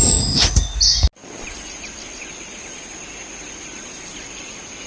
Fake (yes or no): no